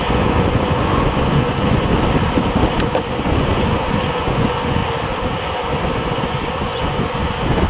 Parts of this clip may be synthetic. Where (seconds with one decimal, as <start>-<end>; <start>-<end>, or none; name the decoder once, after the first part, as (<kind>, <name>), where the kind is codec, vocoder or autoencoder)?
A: 0.0-1.9 (vocoder, Vocos); 2.7-4.8; 5.4-7.7